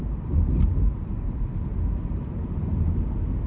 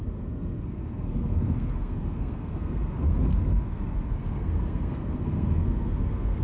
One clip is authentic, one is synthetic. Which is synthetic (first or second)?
second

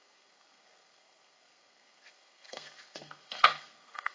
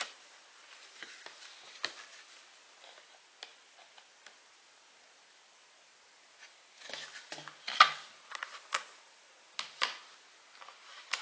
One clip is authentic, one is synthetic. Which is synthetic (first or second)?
first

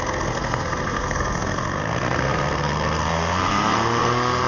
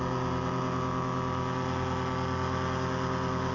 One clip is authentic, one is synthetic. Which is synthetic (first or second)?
first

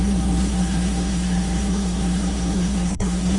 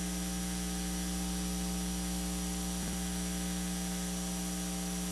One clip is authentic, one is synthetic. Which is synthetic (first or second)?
first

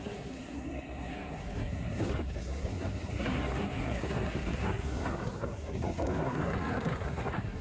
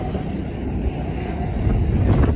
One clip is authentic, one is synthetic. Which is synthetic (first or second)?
first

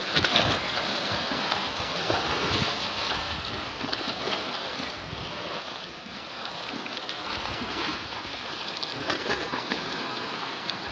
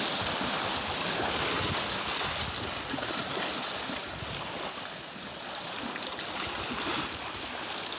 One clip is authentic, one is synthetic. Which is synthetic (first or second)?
first